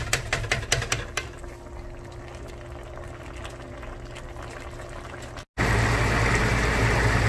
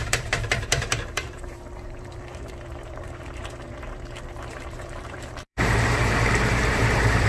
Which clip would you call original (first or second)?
first